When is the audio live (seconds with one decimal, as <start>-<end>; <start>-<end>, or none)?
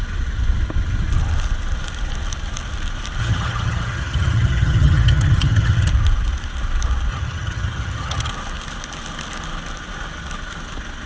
0.0-3.2; 5.9-7.1; 8.3-11.1